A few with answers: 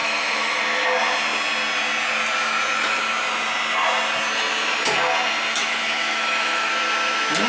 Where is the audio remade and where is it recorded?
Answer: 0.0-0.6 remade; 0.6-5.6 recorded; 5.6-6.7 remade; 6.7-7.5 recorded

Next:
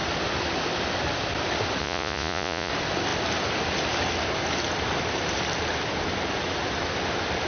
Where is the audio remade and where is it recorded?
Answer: 0.0-1.8 recorded; 1.8-2.7 remade; 2.7-7.5 recorded

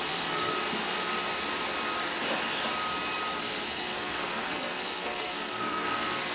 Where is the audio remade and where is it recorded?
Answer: 0.0-0.5 remade; 0.5-3.4 recorded; 3.4-6.3 remade